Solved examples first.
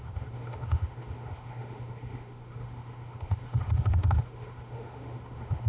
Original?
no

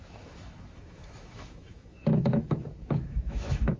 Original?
no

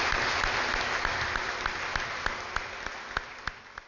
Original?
yes